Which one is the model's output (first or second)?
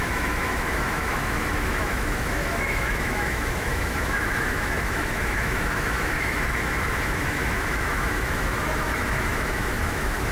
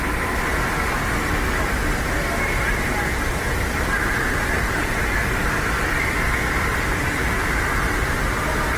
first